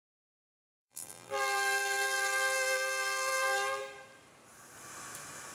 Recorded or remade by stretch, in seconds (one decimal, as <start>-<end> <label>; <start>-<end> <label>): 0.0-0.5 recorded; 0.5-3.8 remade; 3.8-5.5 recorded